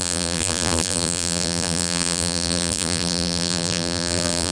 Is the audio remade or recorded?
remade